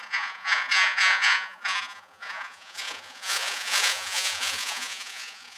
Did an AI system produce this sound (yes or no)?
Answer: yes